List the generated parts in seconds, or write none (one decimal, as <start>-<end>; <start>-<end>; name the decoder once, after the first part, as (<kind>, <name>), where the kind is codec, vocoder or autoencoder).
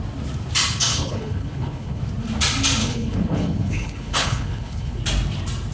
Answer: 0.9-2.0 (codec, HILCodec); 2.8-5.0